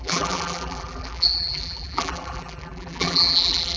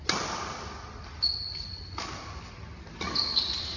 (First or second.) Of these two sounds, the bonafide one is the second